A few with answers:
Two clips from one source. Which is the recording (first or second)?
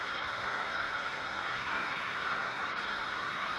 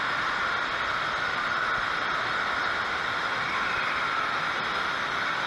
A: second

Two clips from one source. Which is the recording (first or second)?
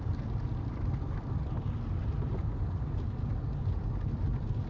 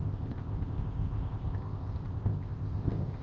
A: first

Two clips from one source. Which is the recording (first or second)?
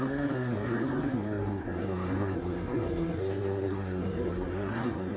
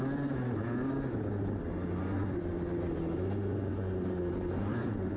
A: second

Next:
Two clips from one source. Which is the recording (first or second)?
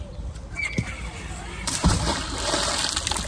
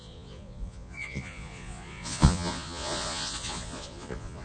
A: first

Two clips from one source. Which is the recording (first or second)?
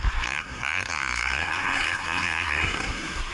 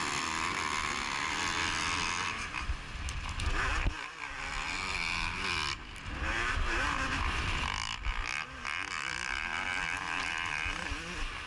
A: second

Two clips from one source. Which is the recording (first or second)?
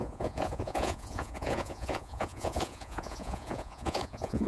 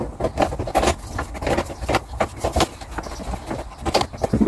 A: second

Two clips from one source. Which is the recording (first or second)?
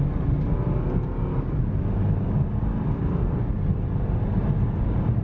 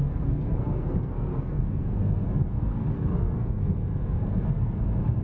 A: first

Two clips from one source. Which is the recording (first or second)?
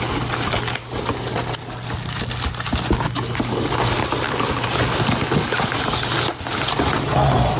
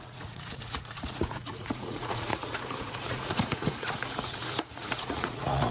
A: first